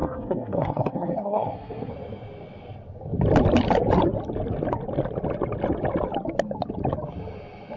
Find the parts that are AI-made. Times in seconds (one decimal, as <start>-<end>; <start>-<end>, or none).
0.0-1.9